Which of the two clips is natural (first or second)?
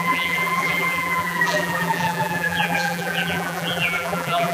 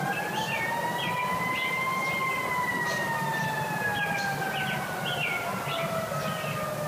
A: second